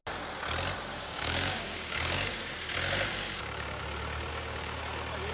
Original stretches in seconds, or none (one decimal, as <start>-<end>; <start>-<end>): 0.0-0.9; 2.4-3.2; 3.8-4.3; 4.8-5.3